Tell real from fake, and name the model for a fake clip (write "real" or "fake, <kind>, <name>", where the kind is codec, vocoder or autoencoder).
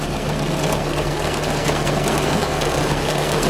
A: fake, codec, SNAC